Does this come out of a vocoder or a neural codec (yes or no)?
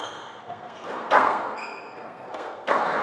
yes